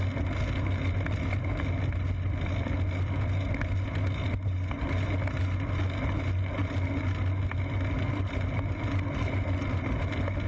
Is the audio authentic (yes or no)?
yes